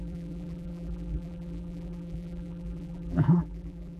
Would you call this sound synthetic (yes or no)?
yes